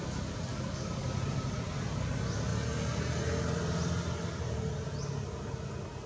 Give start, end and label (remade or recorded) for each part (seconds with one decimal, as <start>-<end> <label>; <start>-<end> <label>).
0.0-0.5 recorded; 0.5-1.2 remade; 1.2-6.1 recorded

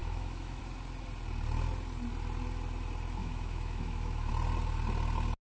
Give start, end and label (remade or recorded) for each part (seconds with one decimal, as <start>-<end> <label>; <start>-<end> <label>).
0.0-0.6 remade; 0.6-3.2 recorded; 3.2-4.3 remade; 4.3-5.4 recorded

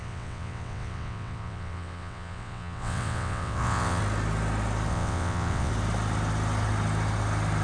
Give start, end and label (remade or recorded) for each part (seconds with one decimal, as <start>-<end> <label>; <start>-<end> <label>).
0.0-4.0 remade; 4.0-4.9 recorded; 4.9-5.7 remade; 5.7-7.6 recorded

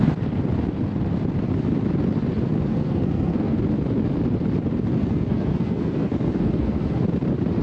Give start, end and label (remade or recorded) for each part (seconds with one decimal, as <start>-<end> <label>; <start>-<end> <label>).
0.0-2.7 recorded; 2.7-3.6 remade; 3.6-5.0 recorded; 5.0-7.0 remade; 7.0-7.6 recorded

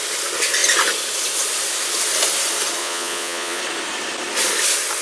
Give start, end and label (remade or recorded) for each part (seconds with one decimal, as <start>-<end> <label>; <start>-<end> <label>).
0.0-2.8 recorded; 2.8-3.6 remade; 3.6-5.0 recorded

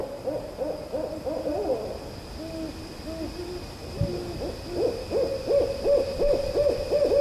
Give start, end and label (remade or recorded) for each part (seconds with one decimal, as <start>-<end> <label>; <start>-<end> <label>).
0.0-7.2 recorded

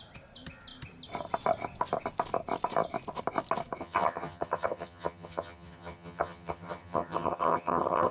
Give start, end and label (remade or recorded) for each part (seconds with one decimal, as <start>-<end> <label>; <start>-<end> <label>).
0.0-3.8 recorded; 3.8-8.1 remade